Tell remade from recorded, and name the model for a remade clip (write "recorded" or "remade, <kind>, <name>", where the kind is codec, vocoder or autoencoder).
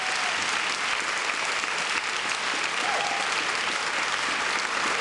recorded